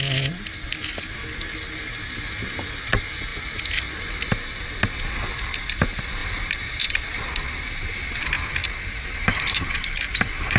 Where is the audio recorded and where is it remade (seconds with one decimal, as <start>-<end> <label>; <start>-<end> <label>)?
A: 0.0-6.2 recorded; 6.2-6.8 remade; 6.8-8.6 recorded; 8.6-10.6 remade